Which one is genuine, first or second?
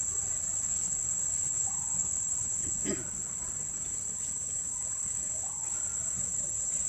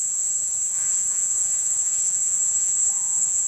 first